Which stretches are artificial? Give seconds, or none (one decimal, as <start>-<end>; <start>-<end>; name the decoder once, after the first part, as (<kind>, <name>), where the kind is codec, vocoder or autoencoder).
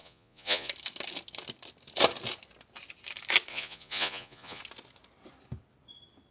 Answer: 0.0-0.7 (vocoder, Vocos); 3.5-4.6